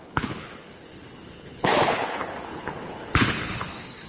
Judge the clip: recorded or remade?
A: remade